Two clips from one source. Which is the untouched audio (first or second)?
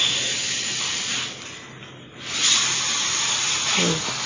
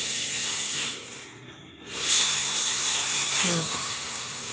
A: first